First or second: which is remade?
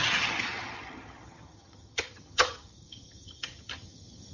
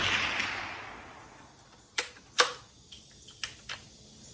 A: first